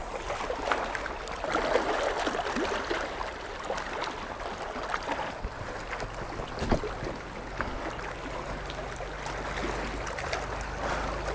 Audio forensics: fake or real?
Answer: real